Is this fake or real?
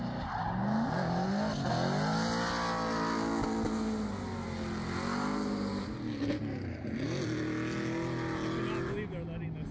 real